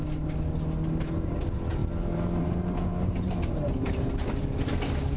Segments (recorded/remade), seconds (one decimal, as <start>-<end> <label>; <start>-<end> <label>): 0.0-1.8 recorded; 1.8-4.1 remade; 4.1-5.2 recorded